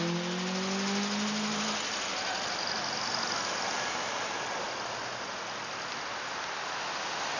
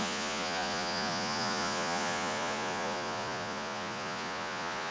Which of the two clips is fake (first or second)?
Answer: second